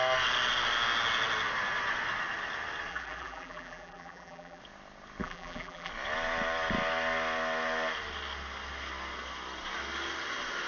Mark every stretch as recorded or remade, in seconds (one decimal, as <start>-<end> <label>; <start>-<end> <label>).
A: 0.0-2.9 recorded; 2.9-4.6 remade; 4.6-5.2 recorded; 5.2-5.9 remade; 5.9-10.7 recorded